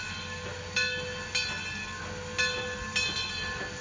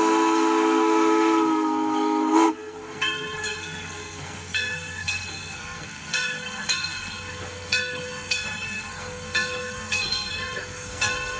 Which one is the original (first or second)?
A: first